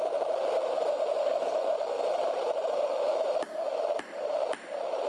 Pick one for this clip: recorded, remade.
recorded